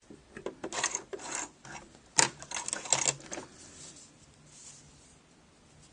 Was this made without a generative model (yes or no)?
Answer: yes